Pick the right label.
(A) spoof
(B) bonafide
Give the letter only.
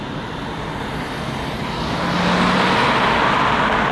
B